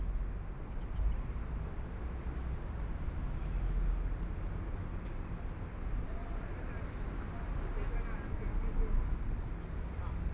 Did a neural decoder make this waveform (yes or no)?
no